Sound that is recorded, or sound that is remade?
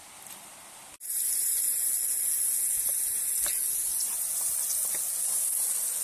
recorded